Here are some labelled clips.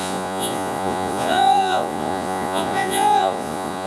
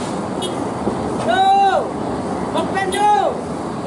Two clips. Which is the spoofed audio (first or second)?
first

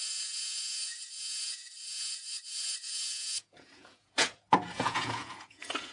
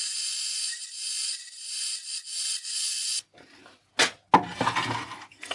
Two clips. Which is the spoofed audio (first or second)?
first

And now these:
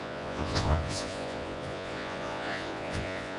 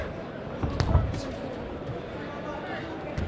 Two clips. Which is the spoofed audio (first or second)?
first